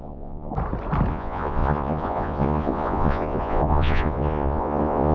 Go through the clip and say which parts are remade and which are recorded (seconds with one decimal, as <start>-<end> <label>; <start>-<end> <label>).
0.0-0.5 remade; 0.5-1.1 recorded; 1.1-5.1 remade